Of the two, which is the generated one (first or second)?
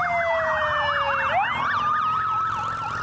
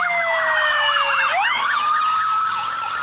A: second